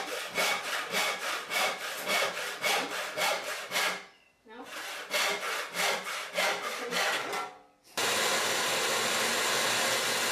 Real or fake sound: real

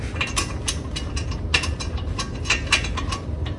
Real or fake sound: fake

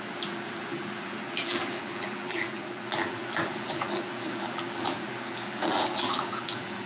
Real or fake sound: fake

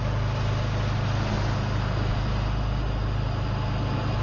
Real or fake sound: real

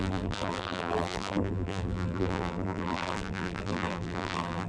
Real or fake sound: fake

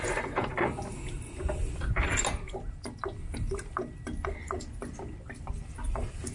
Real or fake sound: real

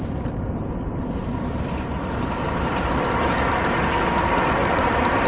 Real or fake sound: fake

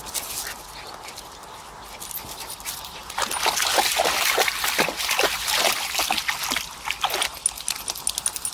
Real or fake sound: real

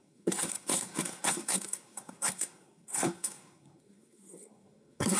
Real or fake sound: fake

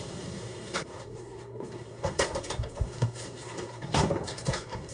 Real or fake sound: fake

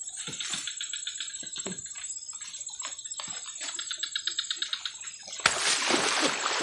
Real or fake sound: real